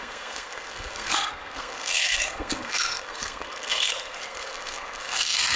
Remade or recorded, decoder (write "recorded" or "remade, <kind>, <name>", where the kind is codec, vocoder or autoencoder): remade, codec, SNAC